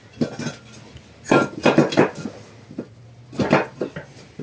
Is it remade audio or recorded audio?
recorded